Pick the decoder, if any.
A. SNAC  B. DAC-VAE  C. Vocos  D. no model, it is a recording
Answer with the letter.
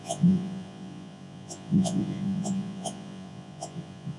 C